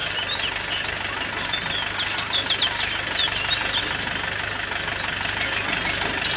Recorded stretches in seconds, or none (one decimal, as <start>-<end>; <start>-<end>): 0.0-6.4